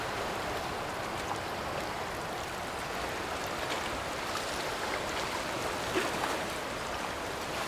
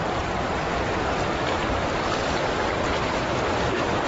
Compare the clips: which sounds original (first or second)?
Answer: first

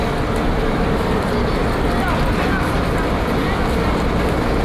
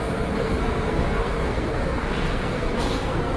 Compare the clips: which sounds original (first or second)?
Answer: first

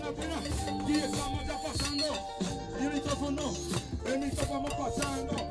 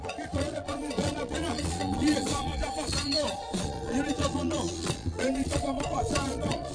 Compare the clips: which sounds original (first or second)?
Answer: first